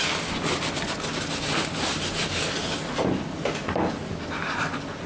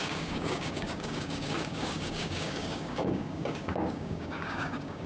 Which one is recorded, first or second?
first